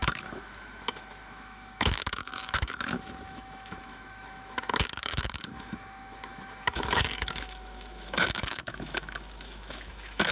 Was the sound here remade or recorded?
remade